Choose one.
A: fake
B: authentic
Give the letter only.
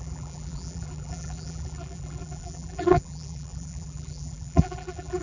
A